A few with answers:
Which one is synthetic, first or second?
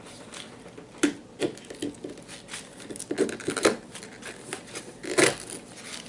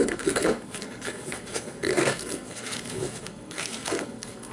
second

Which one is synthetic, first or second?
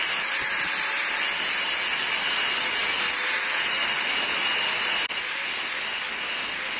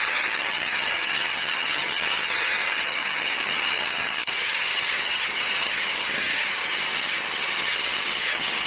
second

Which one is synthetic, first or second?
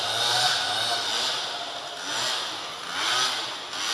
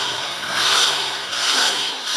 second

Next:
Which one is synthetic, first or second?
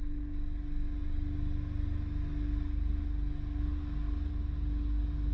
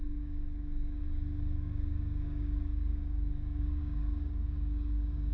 second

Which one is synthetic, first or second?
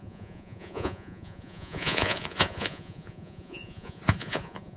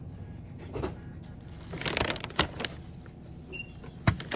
first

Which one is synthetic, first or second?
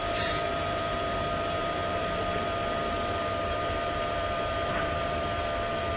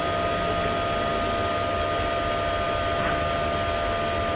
first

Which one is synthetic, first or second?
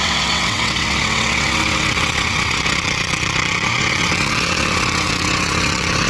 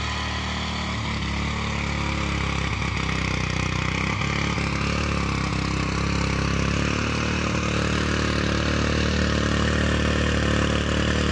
first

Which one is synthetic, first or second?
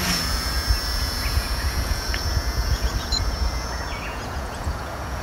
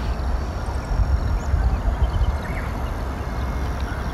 first